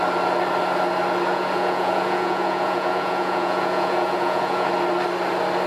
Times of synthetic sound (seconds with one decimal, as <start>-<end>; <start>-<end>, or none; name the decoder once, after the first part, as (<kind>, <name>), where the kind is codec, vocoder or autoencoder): 1.3-4.7 (vocoder, Vocos)